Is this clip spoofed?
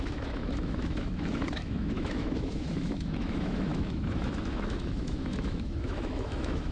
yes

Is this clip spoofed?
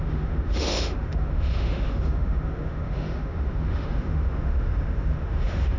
yes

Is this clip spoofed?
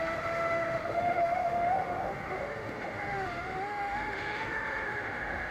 yes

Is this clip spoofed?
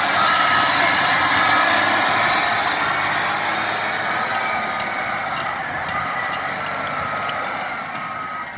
no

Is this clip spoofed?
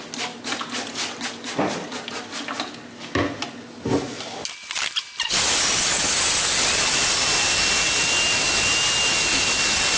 no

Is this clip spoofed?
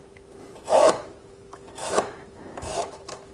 yes